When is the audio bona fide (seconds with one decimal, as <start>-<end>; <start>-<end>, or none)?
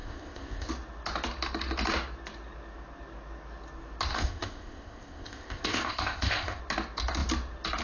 0.7-4.1; 6.6-7.8